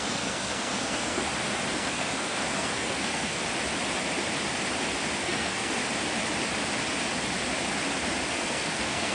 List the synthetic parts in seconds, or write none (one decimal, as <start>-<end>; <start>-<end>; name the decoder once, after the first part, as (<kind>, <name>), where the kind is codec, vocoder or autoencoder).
0.0-1.2 (codec, SNAC); 1.7-3.4; 5.2-5.8; 8.3-9.1